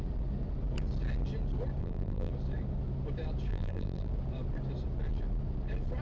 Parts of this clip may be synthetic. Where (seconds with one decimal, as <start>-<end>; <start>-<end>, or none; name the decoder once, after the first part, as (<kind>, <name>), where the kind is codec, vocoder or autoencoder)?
1.8-2.3 (vocoder, BigVGAN v2); 3.5-4.1